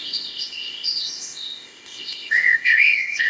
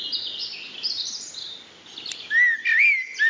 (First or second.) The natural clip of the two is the second